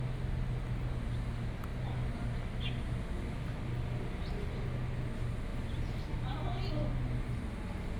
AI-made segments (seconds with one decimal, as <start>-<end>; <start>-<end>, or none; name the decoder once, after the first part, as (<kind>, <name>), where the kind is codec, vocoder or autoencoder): 5.5-6.4 (vocoder, BigVGAN v2)